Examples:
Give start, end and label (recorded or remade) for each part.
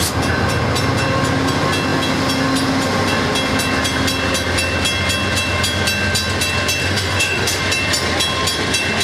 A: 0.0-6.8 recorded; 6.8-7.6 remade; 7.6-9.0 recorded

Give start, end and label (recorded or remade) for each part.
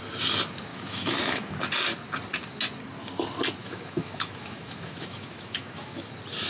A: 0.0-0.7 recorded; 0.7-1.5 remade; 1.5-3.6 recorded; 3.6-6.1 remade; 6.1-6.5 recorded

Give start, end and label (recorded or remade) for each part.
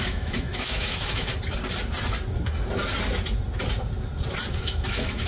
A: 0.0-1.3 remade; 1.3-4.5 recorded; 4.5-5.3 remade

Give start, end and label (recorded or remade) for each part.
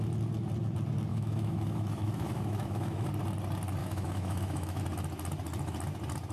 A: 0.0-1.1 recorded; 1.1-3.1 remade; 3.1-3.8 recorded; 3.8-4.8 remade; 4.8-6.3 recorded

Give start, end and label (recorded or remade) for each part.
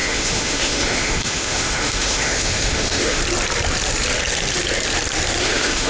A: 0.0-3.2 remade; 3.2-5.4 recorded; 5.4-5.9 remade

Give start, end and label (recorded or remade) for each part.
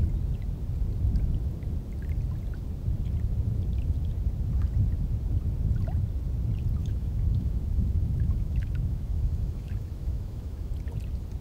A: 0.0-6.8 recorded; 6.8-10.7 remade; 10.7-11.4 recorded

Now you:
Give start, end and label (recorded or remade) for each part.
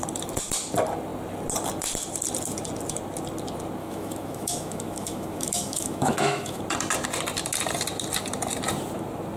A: 0.0-3.8 recorded; 3.8-6.6 remade; 6.6-9.4 recorded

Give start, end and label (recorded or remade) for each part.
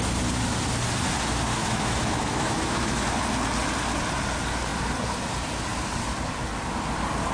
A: 0.0-1.6 recorded; 1.6-3.0 remade; 3.0-7.3 recorded